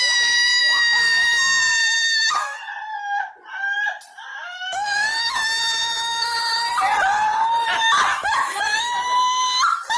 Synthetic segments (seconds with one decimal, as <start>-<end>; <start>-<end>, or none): 0.6-2.6; 4.3-6.4; 8.1-8.6